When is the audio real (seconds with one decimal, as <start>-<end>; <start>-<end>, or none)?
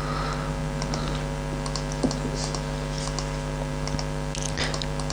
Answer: 0.0-5.1